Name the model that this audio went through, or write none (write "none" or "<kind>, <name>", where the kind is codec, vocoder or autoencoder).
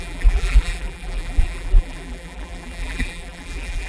vocoder, BigVGAN v2